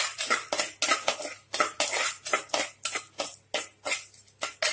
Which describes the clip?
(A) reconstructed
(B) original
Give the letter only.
B